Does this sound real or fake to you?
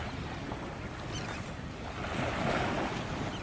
real